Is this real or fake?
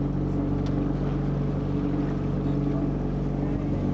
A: real